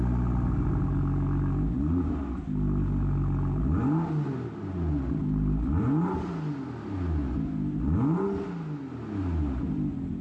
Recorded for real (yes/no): yes